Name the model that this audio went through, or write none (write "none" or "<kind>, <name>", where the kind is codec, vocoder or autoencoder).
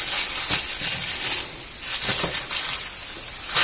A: none